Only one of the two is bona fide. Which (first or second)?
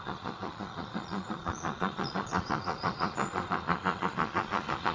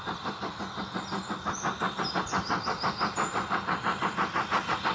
second